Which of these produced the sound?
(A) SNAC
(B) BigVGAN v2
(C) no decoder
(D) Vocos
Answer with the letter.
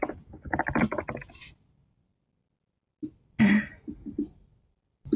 C